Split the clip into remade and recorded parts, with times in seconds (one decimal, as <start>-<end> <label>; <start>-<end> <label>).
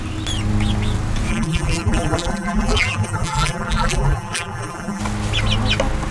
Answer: 0.0-1.3 recorded; 1.3-5.0 remade; 5.0-6.1 recorded